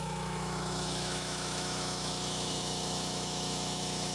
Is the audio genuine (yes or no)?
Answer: no